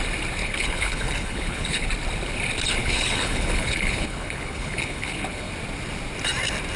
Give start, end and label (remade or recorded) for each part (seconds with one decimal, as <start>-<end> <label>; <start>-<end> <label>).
0.0-0.4 recorded; 0.4-1.9 remade; 1.9-2.8 recorded; 2.8-5.5 remade; 5.5-6.8 recorded